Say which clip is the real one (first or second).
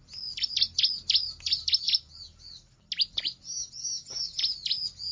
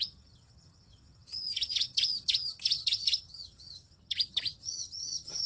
first